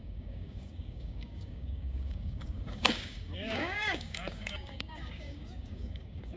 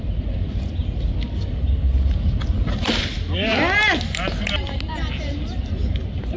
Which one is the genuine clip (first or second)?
second